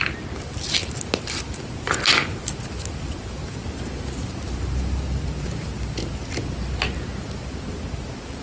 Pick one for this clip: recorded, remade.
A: recorded